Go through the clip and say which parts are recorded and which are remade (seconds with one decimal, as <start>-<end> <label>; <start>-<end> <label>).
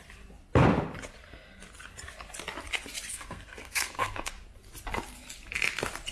0.0-3.1 recorded; 3.1-4.3 remade; 4.3-6.1 recorded